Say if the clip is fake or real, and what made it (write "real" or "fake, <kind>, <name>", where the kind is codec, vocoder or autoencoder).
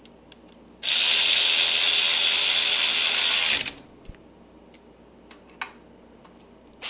real